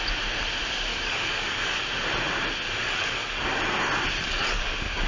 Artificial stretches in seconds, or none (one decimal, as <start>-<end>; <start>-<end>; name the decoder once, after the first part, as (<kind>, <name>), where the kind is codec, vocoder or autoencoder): 0.9-1.8 (codec, DAC); 2.8-3.4; 4.3-5.1